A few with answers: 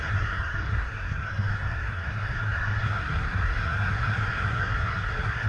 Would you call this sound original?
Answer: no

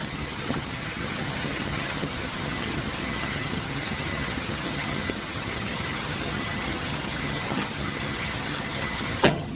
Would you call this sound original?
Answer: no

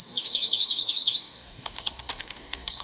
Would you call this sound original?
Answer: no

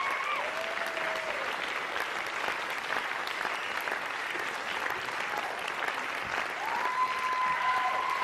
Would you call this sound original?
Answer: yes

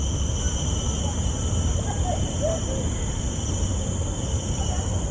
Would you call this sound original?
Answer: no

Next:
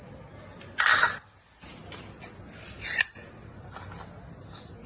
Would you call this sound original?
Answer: yes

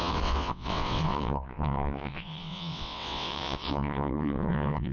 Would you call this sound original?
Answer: no